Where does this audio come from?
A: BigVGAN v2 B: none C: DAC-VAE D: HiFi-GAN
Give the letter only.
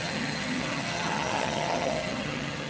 D